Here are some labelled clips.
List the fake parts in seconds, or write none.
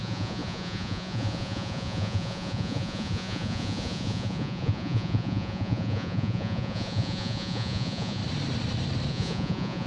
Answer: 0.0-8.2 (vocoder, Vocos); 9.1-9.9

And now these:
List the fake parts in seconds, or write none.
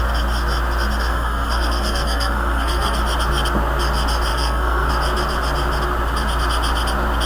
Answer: 1.1-3.0 (codec, SNAC); 4.3-4.9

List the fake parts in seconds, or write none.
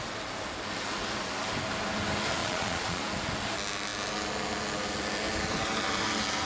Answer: 2.4-3.0 (vocoder, Vocos)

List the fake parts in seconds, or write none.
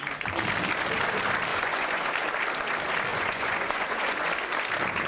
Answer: 1.5-2.1 (vocoder, Vocos); 3.1-4.3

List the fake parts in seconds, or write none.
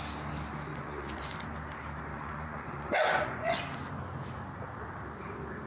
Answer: 0.7-1.4 (vocoder, Vocos); 2.1-3.6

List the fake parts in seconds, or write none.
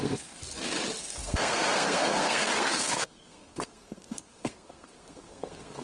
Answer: 0.0-0.4 (codec, SNAC); 1.0-5.8